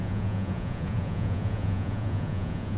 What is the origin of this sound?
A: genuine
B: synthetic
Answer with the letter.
B